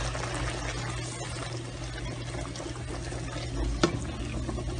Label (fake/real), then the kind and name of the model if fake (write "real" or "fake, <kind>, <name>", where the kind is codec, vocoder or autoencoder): real